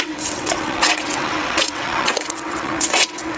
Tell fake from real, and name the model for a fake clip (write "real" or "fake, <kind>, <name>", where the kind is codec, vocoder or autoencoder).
fake, vocoder, WaveNeXt